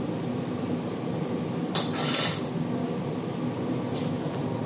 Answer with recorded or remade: recorded